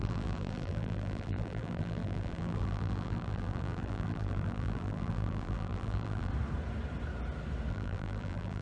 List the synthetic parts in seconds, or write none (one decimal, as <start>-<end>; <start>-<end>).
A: 0.0-6.3; 7.7-8.6

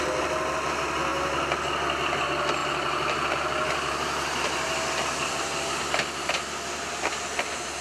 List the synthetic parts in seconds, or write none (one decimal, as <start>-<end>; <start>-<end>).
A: none

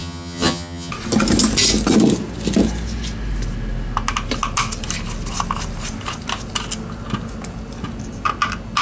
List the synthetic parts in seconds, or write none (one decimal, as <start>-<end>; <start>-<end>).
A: 0.0-0.9

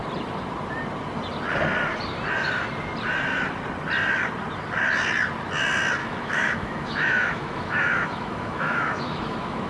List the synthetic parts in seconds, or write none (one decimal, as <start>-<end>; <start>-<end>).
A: 6.0-9.7

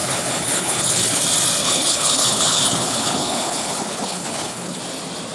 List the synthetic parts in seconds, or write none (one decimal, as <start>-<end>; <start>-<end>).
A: 0.0-1.2; 1.6-4.8

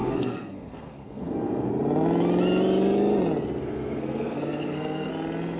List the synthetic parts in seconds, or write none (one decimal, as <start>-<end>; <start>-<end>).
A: 0.0-1.7; 3.6-5.1